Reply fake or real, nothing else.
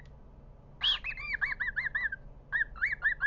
real